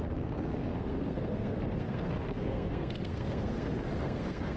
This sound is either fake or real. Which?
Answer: fake